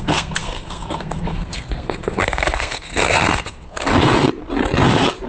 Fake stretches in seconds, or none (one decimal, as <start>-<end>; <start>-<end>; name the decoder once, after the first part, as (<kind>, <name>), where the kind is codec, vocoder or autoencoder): 0.0-3.9 (codec, SNAC)